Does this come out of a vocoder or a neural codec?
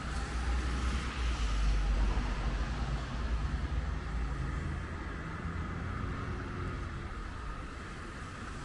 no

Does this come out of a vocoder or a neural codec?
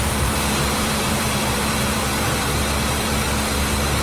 yes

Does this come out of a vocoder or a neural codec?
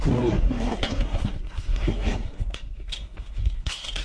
yes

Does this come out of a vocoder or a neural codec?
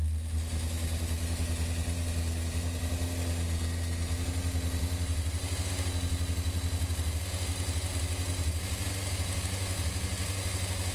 no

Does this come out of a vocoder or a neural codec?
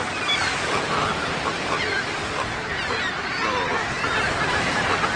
no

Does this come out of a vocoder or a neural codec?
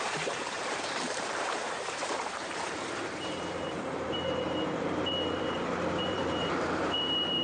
yes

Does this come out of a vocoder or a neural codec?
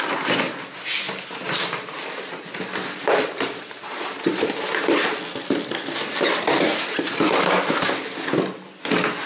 no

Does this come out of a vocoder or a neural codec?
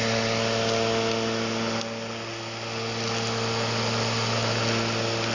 no